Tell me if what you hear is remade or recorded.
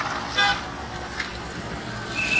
recorded